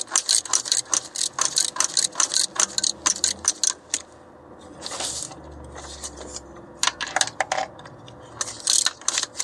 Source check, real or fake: real